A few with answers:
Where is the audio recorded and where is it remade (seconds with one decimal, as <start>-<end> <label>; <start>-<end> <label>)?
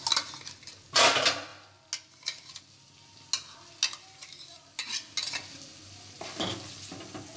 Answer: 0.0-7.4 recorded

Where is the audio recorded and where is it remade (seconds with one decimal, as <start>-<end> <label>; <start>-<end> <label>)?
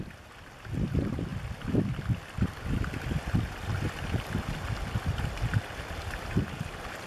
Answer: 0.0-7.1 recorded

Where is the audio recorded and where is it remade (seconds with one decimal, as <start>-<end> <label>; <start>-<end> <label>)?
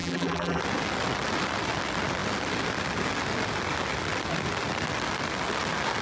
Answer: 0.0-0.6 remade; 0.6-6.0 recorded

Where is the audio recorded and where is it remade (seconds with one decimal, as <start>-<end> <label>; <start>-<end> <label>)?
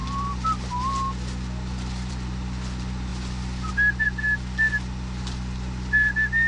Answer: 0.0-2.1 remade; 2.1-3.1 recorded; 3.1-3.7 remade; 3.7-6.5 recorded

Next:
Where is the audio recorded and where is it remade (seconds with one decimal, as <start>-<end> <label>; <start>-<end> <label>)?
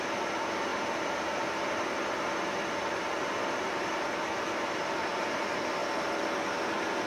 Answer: 0.0-5.8 recorded; 5.8-6.5 remade; 6.5-7.1 recorded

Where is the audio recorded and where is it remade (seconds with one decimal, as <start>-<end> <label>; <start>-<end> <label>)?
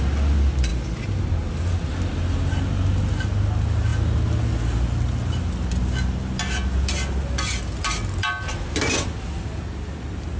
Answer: 0.0-10.4 recorded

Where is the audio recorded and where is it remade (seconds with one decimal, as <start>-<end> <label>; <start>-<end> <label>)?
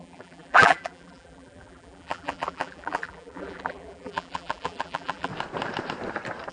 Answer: 0.0-5.3 remade; 5.3-6.5 recorded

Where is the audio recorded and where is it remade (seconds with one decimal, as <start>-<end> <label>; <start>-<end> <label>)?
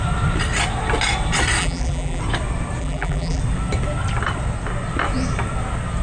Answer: 0.0-1.6 recorded; 1.6-2.2 remade; 2.2-2.8 recorded; 2.8-3.4 remade; 3.4-6.0 recorded